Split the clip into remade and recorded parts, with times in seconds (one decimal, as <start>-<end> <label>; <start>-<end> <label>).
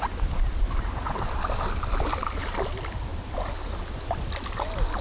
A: 0.0-5.0 recorded